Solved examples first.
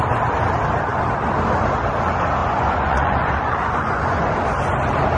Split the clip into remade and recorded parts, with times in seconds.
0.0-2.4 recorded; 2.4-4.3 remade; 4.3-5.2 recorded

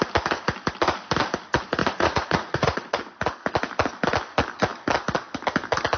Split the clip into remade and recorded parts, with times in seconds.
0.0-1.8 recorded; 1.8-3.0 remade; 3.0-6.0 recorded

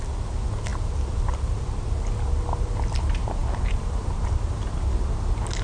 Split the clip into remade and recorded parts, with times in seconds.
0.0-5.6 recorded